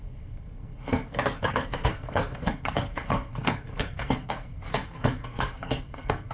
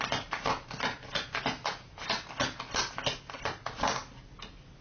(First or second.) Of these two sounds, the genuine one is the second